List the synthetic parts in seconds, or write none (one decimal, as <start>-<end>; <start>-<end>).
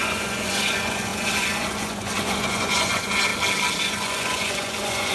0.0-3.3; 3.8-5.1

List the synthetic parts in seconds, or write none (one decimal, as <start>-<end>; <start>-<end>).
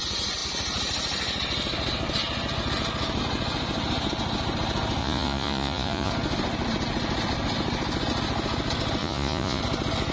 5.0-6.1; 9.0-9.6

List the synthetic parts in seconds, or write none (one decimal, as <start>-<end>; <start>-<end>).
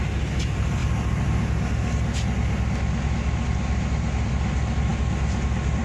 none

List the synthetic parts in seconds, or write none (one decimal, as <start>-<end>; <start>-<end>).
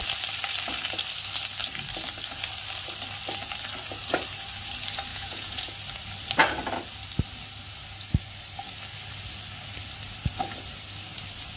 5.1-5.7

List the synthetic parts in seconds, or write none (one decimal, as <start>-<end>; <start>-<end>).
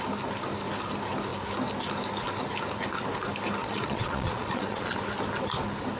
3.6-5.0